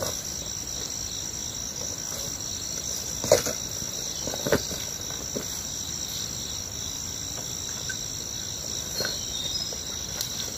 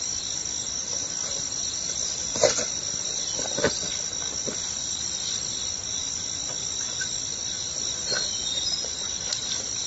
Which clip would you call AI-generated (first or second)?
second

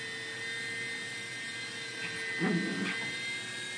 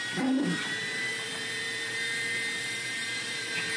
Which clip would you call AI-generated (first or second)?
second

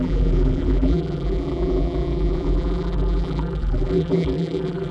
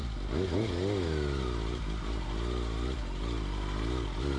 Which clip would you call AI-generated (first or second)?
first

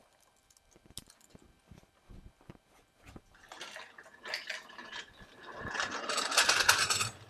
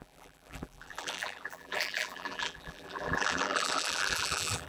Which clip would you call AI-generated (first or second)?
second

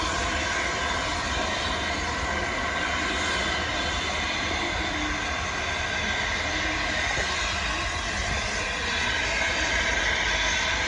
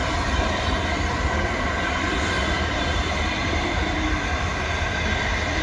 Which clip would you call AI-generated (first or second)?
second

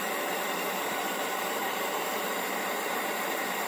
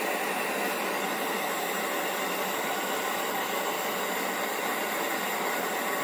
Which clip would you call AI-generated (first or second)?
first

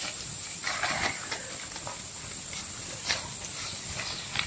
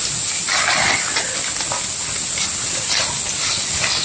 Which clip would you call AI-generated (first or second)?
first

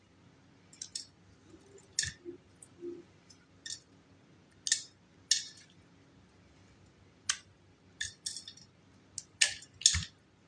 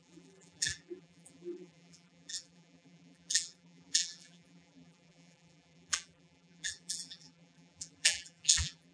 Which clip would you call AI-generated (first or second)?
second